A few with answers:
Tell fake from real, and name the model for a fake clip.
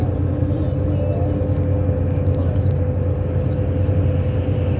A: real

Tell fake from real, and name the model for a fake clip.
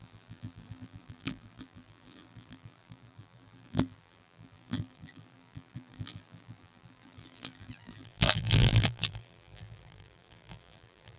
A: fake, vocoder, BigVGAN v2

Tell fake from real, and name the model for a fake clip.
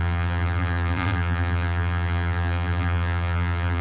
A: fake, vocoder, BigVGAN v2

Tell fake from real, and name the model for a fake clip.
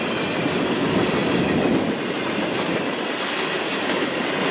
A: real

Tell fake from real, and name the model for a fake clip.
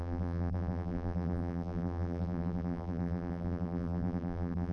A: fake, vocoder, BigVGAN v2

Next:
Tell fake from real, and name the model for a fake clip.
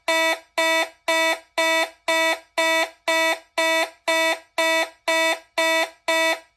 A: real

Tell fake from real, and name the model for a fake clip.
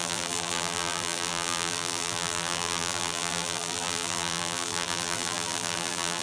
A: fake, vocoder, BigVGAN v2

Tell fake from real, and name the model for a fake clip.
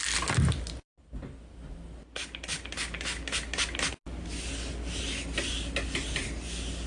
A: real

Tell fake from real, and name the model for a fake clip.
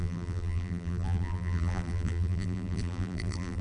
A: fake, vocoder, BigVGAN v2